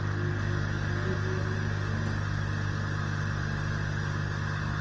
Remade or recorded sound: recorded